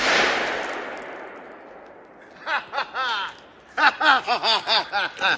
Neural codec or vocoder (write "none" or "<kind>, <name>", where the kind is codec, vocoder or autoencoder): none